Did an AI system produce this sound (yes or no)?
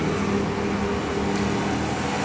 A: no